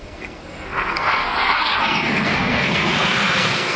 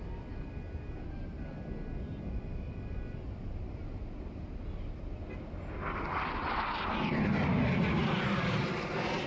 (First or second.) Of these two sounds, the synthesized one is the first